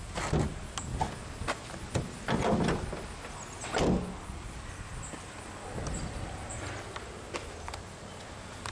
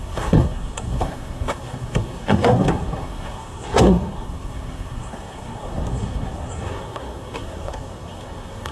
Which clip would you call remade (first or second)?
second